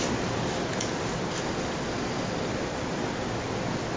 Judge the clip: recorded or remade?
recorded